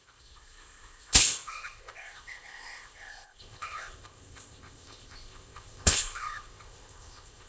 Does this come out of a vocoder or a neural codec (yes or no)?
yes